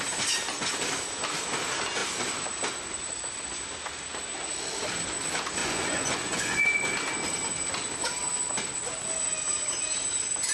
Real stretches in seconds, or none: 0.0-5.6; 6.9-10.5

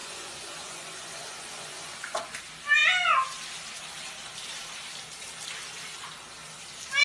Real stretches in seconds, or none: 2.2-7.0

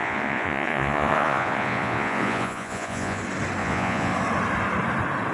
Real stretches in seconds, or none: 3.2-3.6; 4.1-5.3

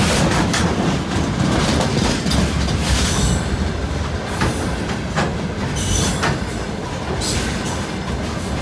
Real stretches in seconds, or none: 0.0-8.6